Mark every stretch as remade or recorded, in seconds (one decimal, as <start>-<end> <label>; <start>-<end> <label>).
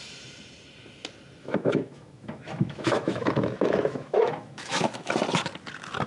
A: 0.0-1.4 recorded; 1.4-5.1 remade; 5.1-6.1 recorded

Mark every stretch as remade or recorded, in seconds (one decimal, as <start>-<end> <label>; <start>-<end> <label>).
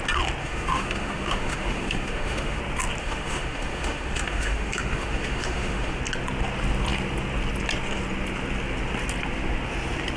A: 0.0-0.4 recorded; 0.4-2.6 remade; 2.6-3.0 recorded; 3.0-6.0 remade; 6.0-10.2 recorded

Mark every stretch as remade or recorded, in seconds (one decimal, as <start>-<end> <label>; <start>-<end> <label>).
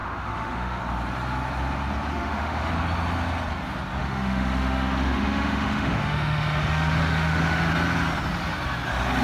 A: 0.0-0.8 remade; 0.8-2.1 recorded; 2.1-2.7 remade; 2.7-4.0 recorded; 4.0-7.7 remade; 7.7-9.2 recorded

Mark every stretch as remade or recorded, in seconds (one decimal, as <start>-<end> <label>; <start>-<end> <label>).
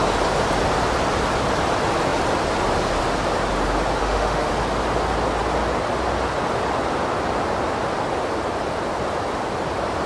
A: 0.0-4.0 recorded; 4.0-4.5 remade; 4.5-10.1 recorded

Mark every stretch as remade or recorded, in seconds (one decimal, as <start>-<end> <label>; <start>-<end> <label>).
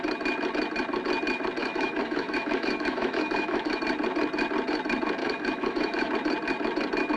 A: 0.0-1.6 recorded; 1.6-3.8 remade; 3.8-5.2 recorded; 5.2-6.1 remade; 6.1-7.2 recorded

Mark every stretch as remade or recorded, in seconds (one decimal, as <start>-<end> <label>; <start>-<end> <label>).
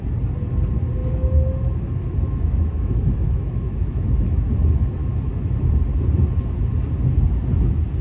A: 0.0-1.0 recorded; 1.0-4.5 remade; 4.5-5.0 recorded; 5.0-5.7 remade; 5.7-8.0 recorded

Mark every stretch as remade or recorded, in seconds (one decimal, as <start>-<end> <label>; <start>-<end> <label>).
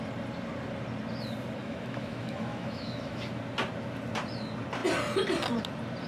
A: 0.0-1.6 recorded; 1.6-3.4 remade; 3.4-6.1 recorded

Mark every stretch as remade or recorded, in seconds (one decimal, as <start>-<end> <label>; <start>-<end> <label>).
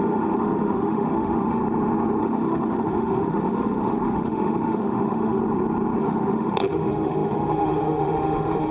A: 0.0-1.6 remade; 1.6-2.2 recorded; 2.2-5.4 remade; 5.4-6.0 recorded; 6.0-8.7 remade